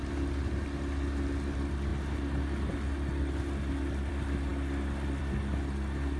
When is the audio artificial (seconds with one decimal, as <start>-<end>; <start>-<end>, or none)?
none